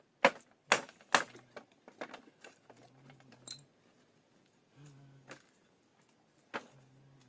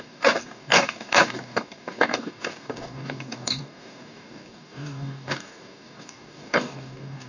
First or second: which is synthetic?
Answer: second